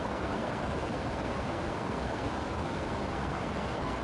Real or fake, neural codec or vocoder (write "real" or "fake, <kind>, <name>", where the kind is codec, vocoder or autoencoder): fake, codec, SNAC